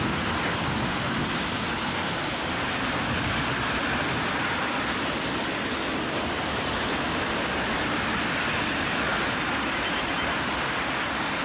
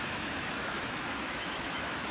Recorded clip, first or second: first